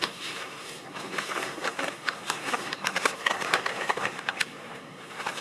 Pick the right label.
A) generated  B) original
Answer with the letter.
A